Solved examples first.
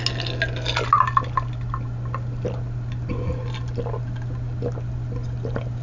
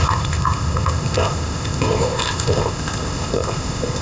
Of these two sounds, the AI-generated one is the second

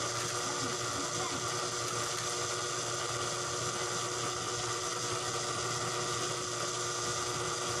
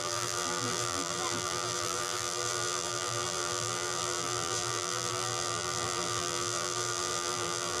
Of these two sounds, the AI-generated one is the second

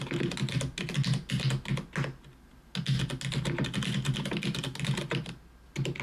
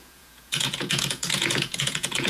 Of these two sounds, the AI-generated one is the second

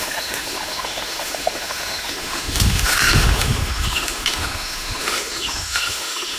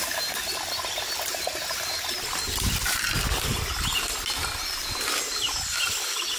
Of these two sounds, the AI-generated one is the first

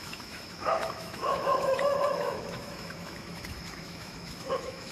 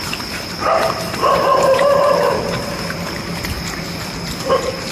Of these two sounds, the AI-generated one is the first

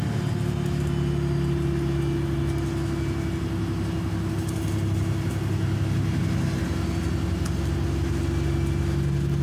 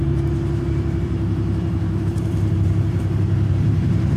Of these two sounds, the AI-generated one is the second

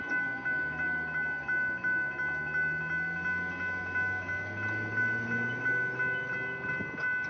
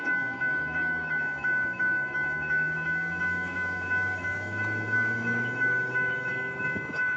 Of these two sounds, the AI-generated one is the second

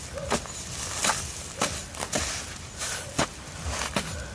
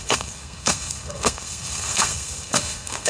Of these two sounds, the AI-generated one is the second